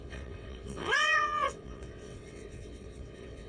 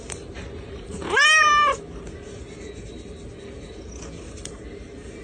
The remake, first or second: first